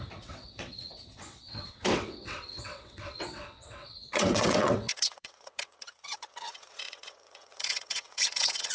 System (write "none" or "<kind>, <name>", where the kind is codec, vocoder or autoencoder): vocoder, WaveNeXt